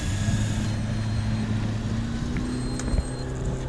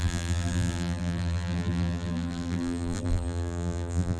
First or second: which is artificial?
second